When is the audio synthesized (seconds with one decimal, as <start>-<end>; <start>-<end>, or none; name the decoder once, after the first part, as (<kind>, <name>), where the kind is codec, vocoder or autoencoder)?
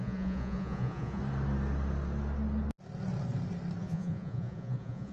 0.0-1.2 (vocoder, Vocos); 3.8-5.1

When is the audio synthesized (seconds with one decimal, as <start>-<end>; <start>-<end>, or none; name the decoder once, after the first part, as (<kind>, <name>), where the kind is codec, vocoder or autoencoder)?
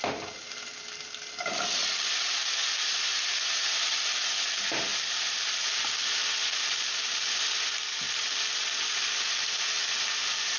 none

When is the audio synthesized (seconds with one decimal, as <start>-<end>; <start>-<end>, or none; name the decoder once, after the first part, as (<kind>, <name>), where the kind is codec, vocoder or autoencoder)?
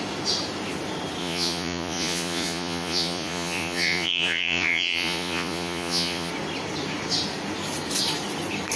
1.2-6.3 (vocoder, Vocos)